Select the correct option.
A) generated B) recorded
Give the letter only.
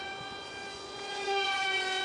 A